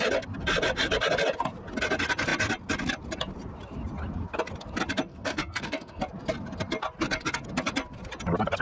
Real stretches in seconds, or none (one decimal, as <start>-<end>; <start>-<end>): 0.0-5.1; 6.0-8.6

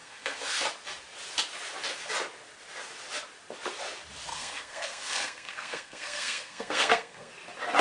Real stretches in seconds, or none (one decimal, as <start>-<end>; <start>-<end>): 0.6-4.3; 7.3-7.8

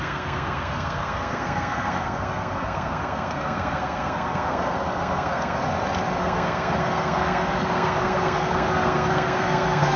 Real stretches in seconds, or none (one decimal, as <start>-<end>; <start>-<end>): 5.6-6.2

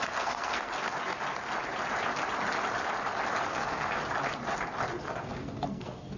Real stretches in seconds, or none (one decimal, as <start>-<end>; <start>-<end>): 0.7-3.4; 4.0-5.0